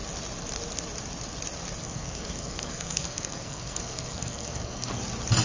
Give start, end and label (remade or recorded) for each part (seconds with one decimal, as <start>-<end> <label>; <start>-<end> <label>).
0.0-1.8 recorded; 1.8-5.0 remade; 5.0-5.4 recorded